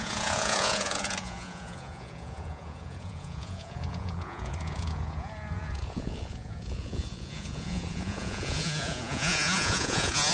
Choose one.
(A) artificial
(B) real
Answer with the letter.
A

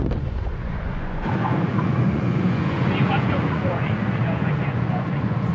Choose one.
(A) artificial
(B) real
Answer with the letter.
A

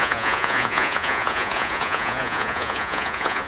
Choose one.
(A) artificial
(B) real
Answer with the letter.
A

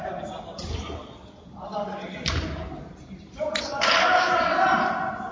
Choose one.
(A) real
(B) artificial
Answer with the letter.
A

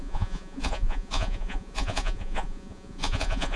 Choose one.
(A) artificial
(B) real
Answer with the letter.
A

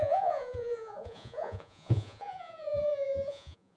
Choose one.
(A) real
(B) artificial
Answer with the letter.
B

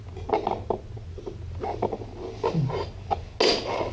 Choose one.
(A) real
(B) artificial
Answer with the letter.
A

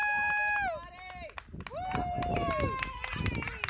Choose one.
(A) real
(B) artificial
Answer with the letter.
A